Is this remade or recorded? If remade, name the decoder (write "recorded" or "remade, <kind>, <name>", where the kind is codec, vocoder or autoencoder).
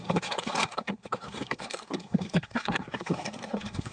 remade, codec, SNAC